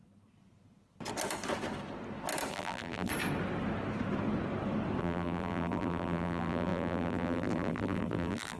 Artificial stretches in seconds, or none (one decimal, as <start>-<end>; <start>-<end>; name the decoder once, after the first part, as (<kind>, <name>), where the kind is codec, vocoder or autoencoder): 2.5-3.1 (vocoder, BigVGAN v2); 5.0-8.6